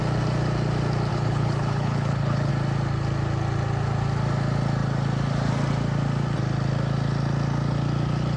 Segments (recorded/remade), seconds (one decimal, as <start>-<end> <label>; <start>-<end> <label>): 0.0-1.1 recorded; 1.1-2.5 remade; 2.5-8.4 recorded